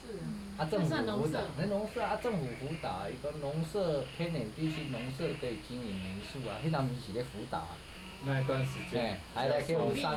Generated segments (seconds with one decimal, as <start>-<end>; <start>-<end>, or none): 5.3-10.2